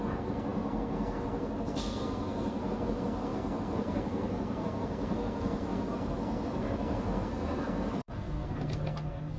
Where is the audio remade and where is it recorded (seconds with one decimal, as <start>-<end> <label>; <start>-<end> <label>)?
0.0-9.4 remade